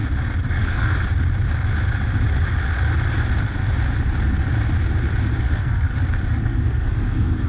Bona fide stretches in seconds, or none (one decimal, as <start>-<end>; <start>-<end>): 0.0-0.5; 0.9-5.4; 5.9-6.4